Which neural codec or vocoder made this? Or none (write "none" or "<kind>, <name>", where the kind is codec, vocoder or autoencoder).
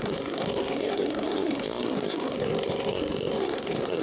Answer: codec, SNAC